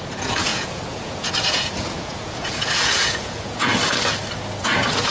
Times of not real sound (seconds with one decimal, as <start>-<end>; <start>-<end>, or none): 0.0-3.7; 4.6-5.1